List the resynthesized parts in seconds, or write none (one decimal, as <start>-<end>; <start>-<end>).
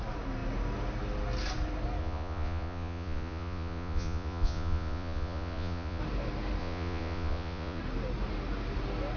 2.0-6.0; 6.6-7.8